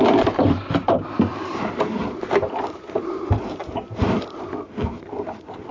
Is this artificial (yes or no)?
yes